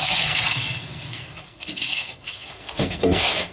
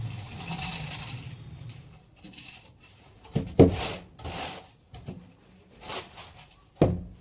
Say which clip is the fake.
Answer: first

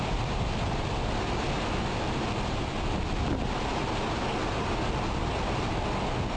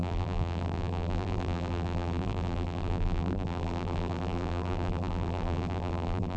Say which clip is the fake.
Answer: second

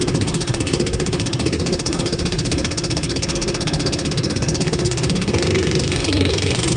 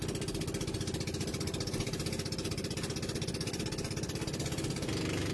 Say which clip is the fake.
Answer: first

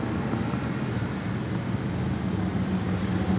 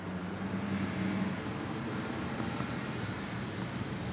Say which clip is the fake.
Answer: second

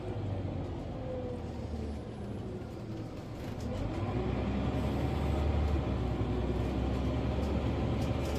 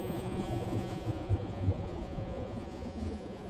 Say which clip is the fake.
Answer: second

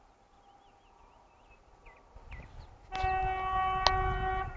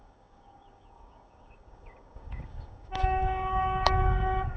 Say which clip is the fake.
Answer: second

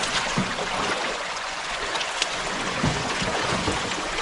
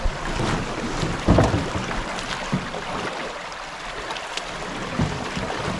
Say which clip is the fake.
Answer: first